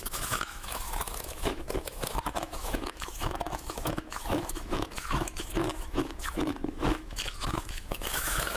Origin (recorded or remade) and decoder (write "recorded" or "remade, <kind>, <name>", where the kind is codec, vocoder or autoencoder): remade, autoencoder, DAC-VAE